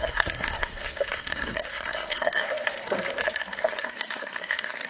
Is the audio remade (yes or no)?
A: yes